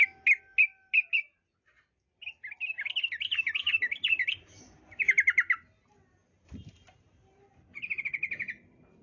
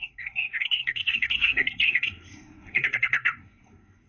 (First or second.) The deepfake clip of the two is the second